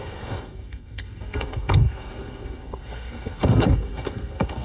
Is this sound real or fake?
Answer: fake